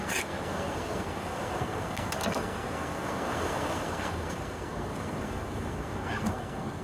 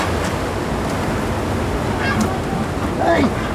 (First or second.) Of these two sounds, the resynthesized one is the first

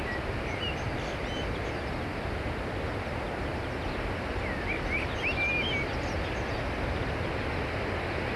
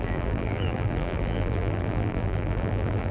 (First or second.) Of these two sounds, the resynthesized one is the second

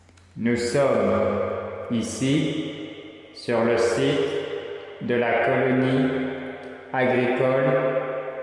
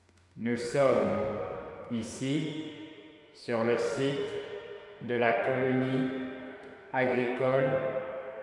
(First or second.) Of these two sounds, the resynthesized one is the second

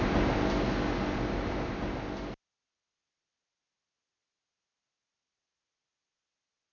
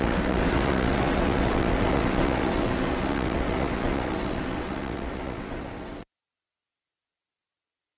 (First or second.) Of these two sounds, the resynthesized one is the second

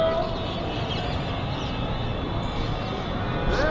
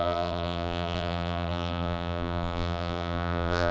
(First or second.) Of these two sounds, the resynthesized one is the second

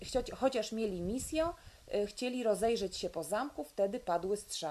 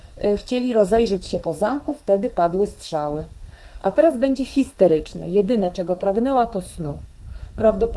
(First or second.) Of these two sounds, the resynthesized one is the second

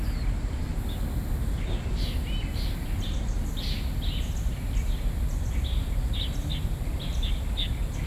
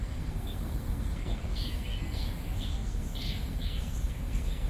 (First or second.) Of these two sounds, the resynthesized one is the second